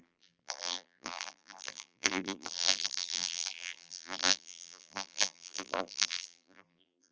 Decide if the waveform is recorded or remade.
remade